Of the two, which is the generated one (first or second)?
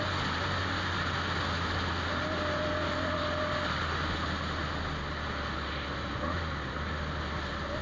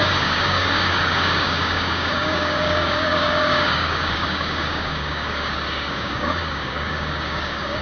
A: second